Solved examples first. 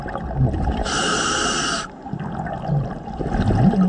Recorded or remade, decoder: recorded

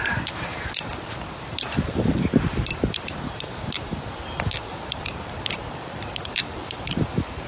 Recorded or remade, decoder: remade, vocoder, BigVGAN v2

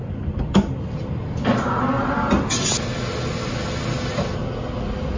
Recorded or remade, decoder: recorded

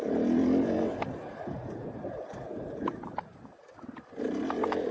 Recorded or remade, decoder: recorded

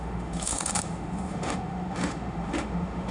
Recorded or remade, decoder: remade, autoencoder, DAC-VAE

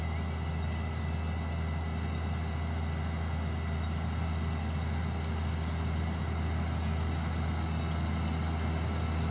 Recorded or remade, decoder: recorded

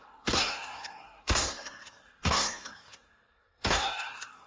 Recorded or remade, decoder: remade, codec, SNAC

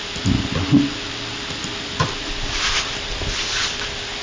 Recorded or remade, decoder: recorded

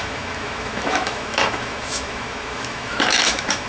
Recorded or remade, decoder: remade, autoencoder, DAC-VAE